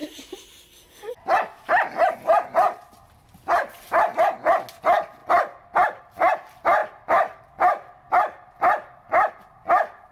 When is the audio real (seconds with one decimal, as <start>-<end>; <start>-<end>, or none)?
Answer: 1.1-5.2; 6.0-6.8; 9.3-10.1